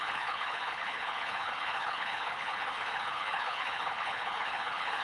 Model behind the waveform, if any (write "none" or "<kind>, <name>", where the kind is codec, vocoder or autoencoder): codec, HILCodec